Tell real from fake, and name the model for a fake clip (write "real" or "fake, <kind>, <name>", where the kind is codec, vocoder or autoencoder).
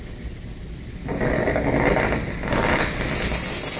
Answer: real